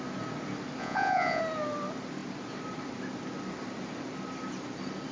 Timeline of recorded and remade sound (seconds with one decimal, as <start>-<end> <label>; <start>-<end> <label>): 0.0-0.8 recorded; 0.8-1.4 remade; 1.4-5.1 recorded